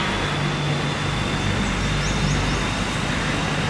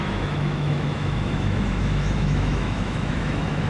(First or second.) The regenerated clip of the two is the second